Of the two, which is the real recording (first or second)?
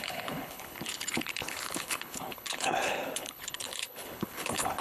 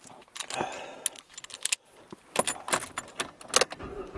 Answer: second